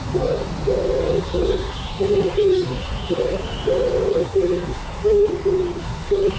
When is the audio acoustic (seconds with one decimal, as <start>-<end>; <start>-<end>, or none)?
0.4-1.0; 3.4-4.1; 5.3-5.8